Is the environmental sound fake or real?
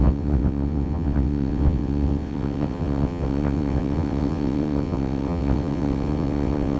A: fake